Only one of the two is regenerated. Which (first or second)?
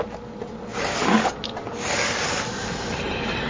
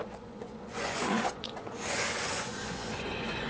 second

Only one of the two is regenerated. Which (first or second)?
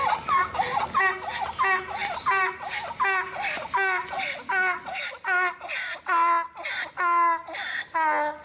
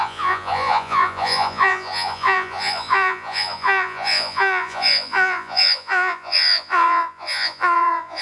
second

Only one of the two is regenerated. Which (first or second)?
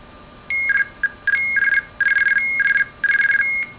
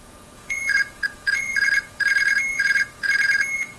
second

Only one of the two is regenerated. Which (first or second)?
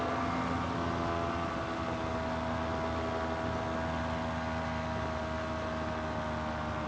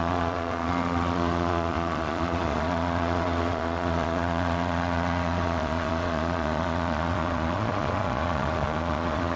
second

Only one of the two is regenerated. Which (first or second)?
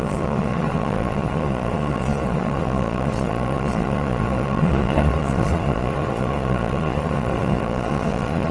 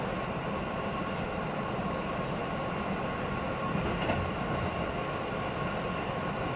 first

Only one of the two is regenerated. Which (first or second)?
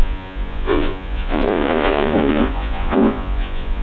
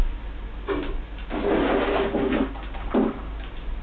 first